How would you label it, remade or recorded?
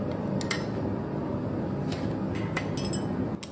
recorded